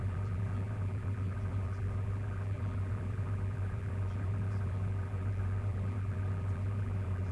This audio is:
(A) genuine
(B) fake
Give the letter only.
B